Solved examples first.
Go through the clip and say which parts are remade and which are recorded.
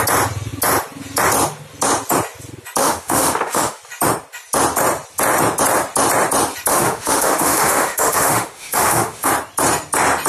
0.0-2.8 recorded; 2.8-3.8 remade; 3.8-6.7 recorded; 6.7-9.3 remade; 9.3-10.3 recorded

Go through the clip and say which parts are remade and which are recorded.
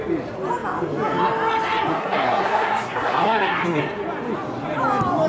0.0-1.9 recorded; 1.9-3.8 remade; 3.8-5.3 recorded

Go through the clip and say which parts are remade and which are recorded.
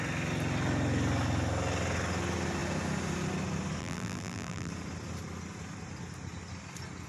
0.0-3.8 recorded; 3.8-4.7 remade; 4.7-7.1 recorded